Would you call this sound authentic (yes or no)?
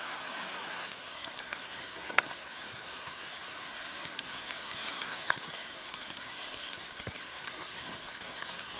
no